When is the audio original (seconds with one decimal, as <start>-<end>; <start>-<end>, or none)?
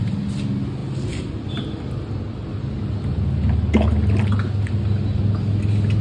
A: 0.0-6.0